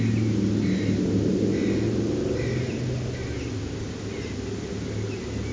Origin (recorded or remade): recorded